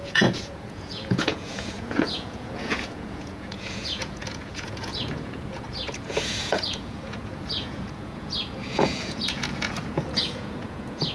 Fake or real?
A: fake